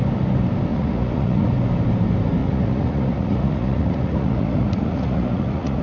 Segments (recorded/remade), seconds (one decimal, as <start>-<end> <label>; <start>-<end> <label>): 0.0-0.7 recorded; 0.7-1.5 remade; 1.5-2.4 recorded; 2.4-5.8 remade